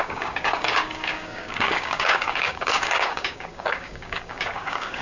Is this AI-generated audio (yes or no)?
yes